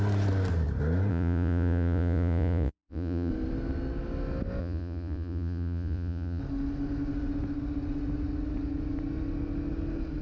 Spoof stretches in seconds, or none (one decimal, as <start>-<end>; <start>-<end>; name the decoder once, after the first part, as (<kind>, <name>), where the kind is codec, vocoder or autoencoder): 1.1-3.3 (vocoder, Vocos); 4.6-6.4